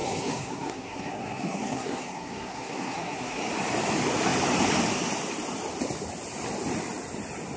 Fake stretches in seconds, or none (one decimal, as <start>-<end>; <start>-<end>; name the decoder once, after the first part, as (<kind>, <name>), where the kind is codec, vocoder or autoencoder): 0.0-3.4 (codec, SNAC)